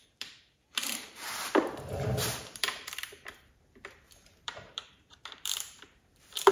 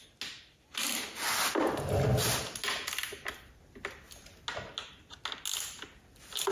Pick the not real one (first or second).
first